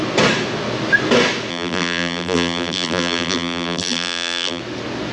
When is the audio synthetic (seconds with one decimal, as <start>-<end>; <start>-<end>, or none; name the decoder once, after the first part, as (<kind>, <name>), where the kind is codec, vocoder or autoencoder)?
1.5-4.6 (vocoder, BigVGAN v2)